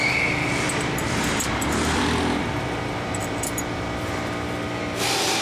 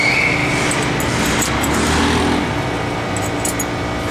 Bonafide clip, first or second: second